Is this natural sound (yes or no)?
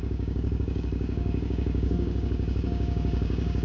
no